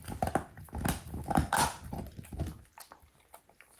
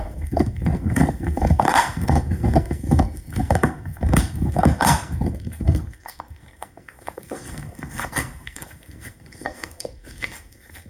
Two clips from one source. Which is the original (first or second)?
first